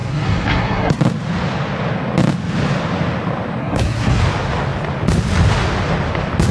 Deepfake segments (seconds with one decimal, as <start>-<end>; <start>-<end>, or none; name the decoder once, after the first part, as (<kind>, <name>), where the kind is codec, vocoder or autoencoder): 0.0-1.0 (codec, SNAC); 3.6-4.2